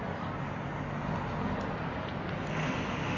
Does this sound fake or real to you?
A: real